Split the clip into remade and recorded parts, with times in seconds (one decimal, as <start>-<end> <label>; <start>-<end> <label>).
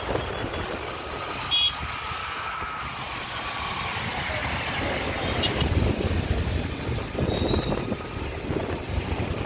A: 0.0-2.2 recorded; 2.2-2.8 remade; 2.8-9.5 recorded